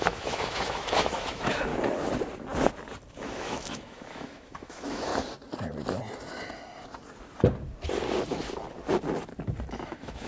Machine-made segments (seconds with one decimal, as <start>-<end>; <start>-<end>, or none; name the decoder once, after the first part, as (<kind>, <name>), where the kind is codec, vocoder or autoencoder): 0.0-1.7 (autoencoder, DAC-VAE); 3.1-5.1; 9.7-10.3